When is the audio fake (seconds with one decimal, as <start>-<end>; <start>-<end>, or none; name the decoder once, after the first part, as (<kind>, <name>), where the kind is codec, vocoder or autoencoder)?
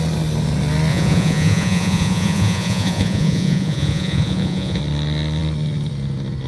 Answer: 0.9-4.8 (vocoder, Vocos)